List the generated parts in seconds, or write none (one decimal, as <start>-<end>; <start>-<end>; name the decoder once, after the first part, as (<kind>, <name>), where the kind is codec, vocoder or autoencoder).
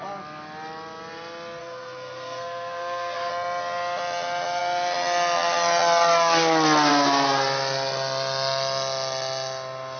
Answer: 1.6-3.3 (codec, SNAC)